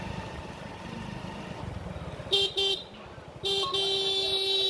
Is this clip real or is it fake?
real